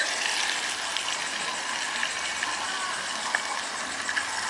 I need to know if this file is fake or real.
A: real